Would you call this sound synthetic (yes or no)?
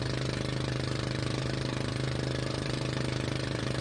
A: yes